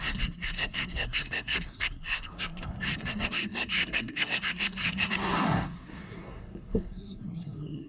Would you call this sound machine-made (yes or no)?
yes